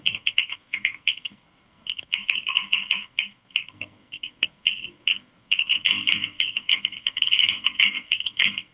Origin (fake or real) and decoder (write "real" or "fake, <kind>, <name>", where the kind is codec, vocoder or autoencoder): fake, codec, SNAC